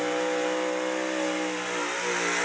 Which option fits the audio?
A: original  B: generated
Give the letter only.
A